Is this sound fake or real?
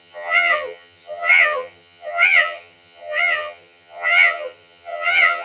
fake